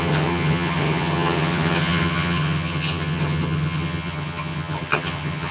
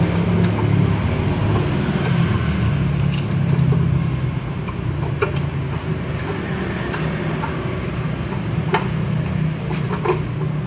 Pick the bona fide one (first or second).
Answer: second